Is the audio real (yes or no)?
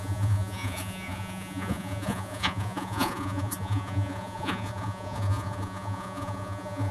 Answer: no